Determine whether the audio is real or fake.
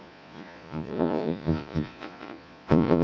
fake